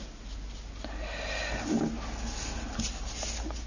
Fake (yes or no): no